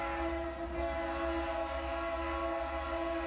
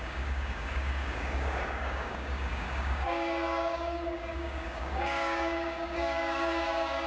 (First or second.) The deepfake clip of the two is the second